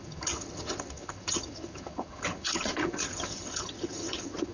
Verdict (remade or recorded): remade